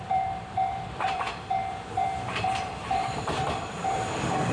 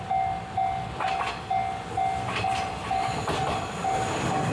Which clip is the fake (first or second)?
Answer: first